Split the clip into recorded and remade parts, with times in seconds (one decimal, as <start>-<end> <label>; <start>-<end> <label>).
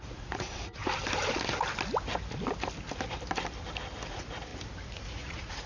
0.0-0.8 remade; 0.8-4.1 recorded; 4.1-4.5 remade; 4.5-5.0 recorded; 5.0-5.7 remade